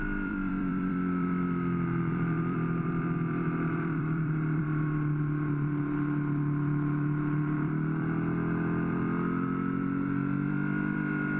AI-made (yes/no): yes